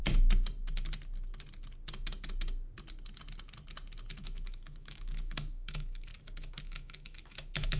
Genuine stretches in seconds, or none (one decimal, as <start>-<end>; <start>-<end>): 0.0-4.2; 6.1-6.6